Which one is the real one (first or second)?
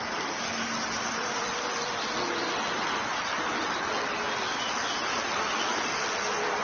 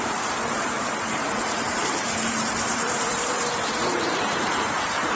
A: first